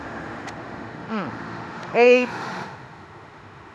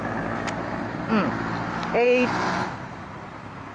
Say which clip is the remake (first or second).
first